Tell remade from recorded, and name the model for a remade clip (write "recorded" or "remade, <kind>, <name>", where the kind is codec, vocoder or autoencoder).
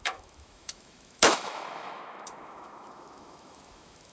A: remade, autoencoder, DAC-VAE